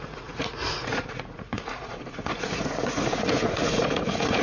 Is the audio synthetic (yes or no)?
yes